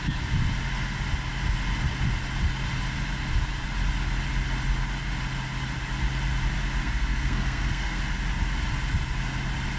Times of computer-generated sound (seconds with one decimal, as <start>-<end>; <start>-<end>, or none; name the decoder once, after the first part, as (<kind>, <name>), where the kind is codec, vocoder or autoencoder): 6.8-8.0 (codec, SNAC)